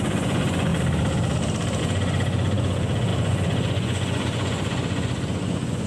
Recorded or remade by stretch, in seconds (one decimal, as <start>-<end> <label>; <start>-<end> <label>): 0.0-0.7 remade; 0.7-1.8 recorded; 1.8-5.9 remade